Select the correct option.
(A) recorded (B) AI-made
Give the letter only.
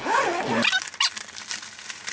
A